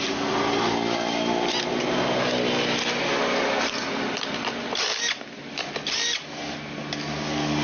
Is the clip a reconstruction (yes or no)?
no